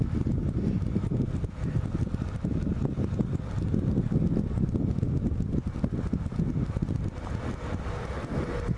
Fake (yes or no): no